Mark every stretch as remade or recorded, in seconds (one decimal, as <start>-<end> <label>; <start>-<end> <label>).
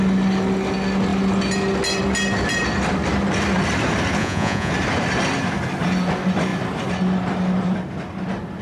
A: 0.0-4.2 recorded; 4.2-4.7 remade; 4.7-8.6 recorded